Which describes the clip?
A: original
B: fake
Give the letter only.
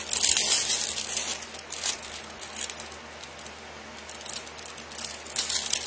A